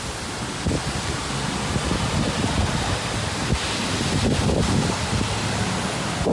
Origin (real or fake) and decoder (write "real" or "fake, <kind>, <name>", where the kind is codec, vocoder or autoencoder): real